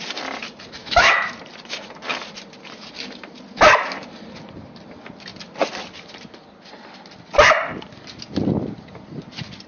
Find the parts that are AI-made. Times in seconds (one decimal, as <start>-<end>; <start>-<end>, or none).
0.8-1.3